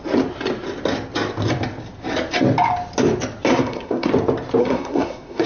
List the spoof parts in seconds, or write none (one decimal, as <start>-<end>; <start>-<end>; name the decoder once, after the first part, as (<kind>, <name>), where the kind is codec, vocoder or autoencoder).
3.5-4.1 (codec, SNAC); 4.6-5.5

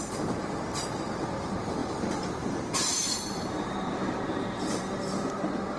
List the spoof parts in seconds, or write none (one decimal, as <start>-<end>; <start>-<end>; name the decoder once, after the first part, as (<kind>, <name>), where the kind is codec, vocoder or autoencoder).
1.8-5.3 (vocoder, BigVGAN v2)

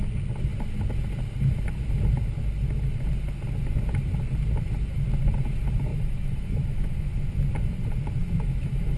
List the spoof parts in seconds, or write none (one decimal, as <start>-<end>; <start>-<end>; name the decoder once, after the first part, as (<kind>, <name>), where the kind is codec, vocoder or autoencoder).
5.9-7.1 (autoencoder, DAC-VAE); 8.2-9.0